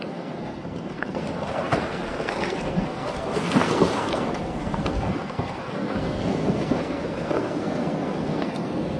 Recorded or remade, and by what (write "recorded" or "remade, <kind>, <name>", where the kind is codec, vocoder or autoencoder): remade, codec, SNAC